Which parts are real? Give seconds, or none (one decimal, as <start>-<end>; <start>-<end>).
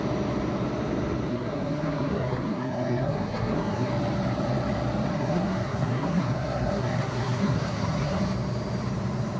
0.0-1.3; 3.9-5.1; 8.2-9.4